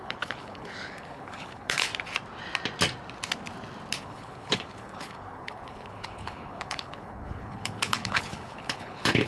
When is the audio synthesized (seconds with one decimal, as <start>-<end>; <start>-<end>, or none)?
0.0-1.9; 4.0-9.3